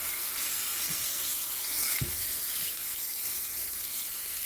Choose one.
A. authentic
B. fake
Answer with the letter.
B